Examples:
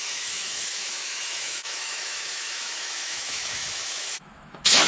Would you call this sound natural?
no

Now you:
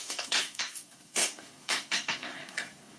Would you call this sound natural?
no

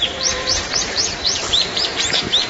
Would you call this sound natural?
no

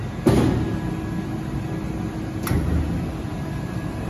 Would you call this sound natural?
yes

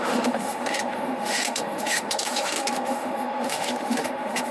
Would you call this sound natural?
no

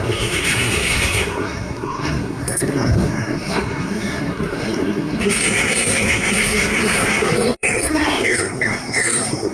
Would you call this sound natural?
no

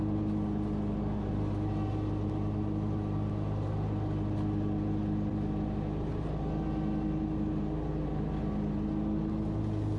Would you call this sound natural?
yes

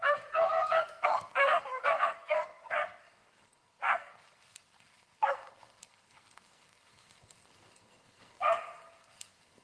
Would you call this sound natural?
no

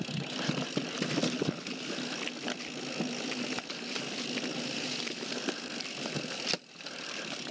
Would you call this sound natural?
yes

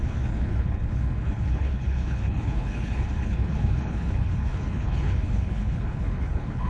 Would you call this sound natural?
no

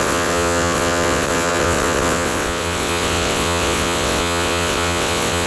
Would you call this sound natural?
no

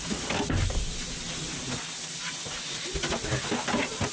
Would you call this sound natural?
yes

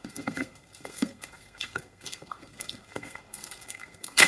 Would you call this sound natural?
no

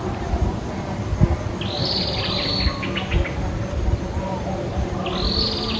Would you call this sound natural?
yes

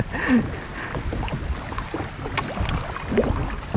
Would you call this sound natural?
yes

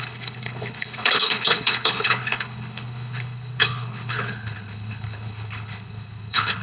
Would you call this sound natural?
no